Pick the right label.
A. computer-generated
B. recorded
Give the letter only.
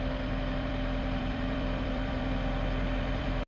A